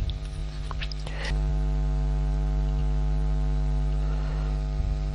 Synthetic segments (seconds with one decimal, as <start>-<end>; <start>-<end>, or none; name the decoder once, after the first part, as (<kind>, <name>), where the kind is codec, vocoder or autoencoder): none